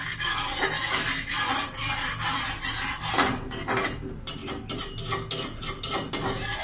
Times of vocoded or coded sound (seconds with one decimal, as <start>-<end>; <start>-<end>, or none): none